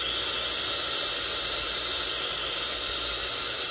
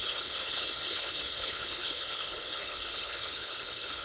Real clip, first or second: first